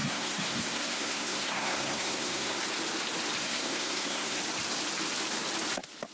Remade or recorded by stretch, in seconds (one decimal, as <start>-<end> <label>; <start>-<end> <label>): 0.0-2.6 remade; 2.6-3.4 recorded; 3.4-4.4 remade; 4.4-6.1 recorded